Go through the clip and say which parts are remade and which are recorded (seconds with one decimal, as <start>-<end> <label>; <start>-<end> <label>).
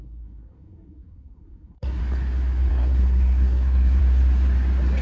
0.0-2.0 remade; 2.0-2.7 recorded; 2.7-4.0 remade; 4.0-5.0 recorded